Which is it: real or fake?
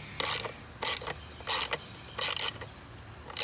real